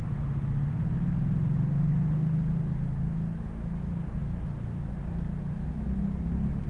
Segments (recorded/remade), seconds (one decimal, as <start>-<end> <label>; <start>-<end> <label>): 0.0-6.7 recorded